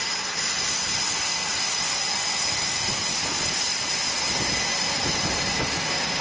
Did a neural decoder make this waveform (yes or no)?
no